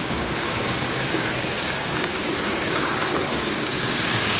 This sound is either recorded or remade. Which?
remade